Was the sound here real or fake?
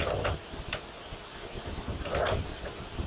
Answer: real